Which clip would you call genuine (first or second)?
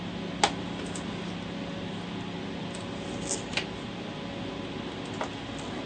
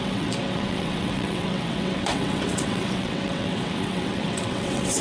first